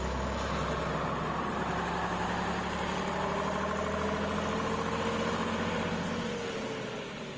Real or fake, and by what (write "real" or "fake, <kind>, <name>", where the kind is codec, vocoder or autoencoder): real